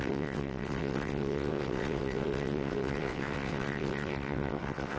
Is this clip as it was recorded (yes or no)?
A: no